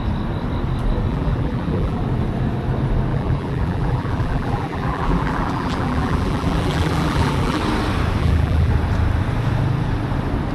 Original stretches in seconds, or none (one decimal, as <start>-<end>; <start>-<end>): 0.0-1.1; 2.0-3.1; 7.6-8.2; 8.7-10.5